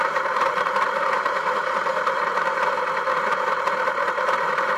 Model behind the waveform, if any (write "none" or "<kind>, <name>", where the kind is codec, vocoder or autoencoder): vocoder, BigVGAN v2